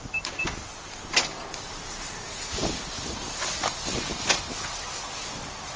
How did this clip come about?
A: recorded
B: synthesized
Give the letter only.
A